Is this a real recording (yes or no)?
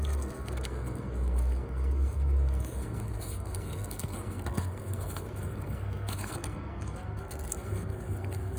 no